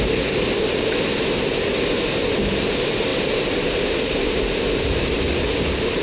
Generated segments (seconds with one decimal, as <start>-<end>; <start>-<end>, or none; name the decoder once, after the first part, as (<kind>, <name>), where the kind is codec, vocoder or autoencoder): none